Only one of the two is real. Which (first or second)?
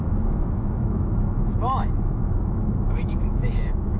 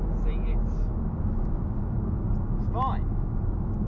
second